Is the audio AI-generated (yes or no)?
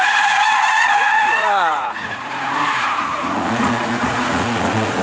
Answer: yes